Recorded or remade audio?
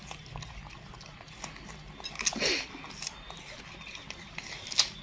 recorded